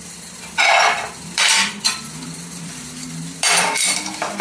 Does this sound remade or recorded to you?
remade